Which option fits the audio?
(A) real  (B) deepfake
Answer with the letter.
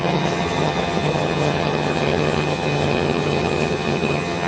B